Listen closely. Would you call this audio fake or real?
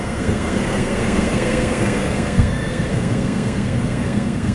fake